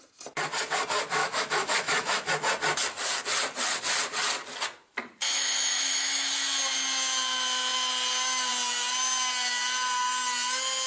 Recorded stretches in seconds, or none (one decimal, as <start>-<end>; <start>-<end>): 0.0-1.2; 2.3-5.2; 6.3-10.9